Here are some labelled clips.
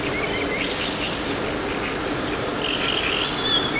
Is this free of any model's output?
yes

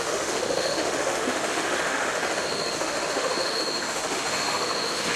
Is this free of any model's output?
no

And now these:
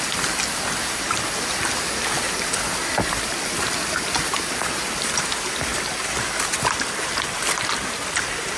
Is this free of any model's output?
yes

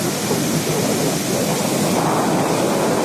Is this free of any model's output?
yes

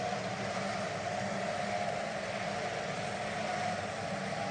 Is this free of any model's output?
yes